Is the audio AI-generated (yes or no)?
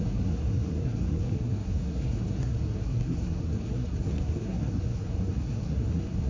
yes